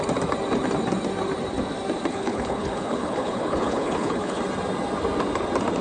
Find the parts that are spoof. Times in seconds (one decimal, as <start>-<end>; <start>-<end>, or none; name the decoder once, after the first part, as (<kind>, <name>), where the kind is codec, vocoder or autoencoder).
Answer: 2.1-4.4 (codec, HILCodec)